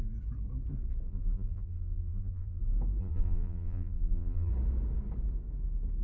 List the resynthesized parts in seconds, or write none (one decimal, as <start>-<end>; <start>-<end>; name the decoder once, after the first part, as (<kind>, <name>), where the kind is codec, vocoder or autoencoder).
1.1-2.6 (vocoder, BigVGAN v2); 3.0-4.5